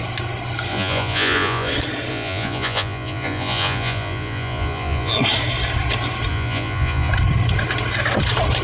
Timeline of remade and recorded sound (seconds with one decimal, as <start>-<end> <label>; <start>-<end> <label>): 0.0-0.7 recorded; 0.7-1.7 remade; 1.7-2.1 recorded; 2.1-5.1 remade; 5.1-6.3 recorded; 6.3-7.1 remade; 7.1-8.6 recorded